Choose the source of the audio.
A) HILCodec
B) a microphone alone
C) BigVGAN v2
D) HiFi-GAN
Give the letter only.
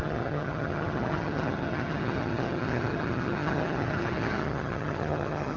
D